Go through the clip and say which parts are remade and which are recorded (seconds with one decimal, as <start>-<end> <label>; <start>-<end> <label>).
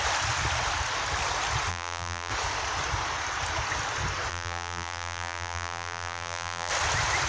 0.0-1.7 recorded; 1.7-2.3 remade; 2.3-4.3 recorded; 4.3-6.7 remade; 6.7-7.3 recorded